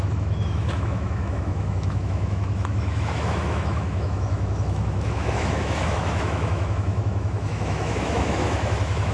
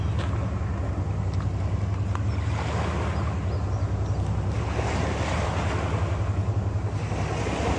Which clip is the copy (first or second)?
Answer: first